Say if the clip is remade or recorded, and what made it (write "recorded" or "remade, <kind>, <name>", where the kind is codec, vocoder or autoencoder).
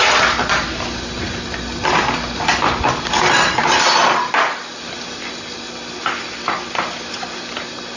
recorded